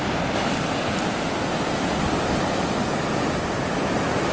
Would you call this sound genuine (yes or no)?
yes